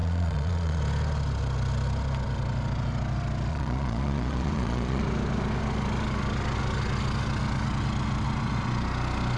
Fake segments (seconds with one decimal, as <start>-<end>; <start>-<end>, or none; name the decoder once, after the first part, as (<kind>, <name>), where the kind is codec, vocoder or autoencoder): 0.0-0.8 (vocoder, Vocos); 3.5-5.0